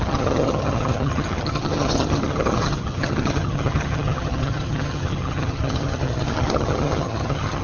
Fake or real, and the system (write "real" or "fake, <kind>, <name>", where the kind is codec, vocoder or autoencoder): fake, vocoder, HiFi-GAN